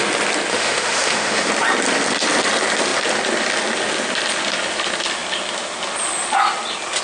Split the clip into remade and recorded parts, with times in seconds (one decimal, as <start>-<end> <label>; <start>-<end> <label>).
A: 0.0-0.5 recorded; 0.5-1.5 remade; 1.5-7.0 recorded